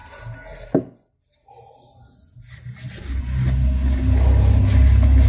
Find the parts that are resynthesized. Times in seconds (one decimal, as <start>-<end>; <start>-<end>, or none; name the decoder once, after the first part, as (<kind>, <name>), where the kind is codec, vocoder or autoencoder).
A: none